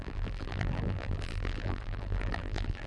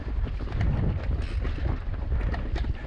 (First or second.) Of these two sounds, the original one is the second